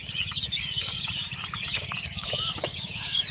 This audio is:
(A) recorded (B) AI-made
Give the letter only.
B